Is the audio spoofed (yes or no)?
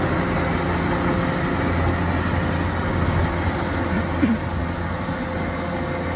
no